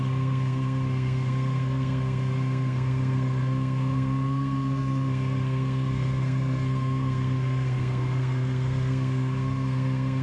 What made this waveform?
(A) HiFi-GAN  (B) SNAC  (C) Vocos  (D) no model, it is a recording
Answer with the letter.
B